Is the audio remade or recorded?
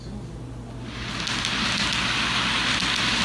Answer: recorded